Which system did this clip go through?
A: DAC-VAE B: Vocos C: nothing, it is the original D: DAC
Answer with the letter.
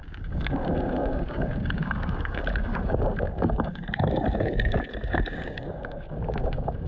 D